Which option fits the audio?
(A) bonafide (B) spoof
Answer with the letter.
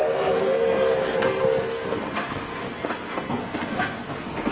B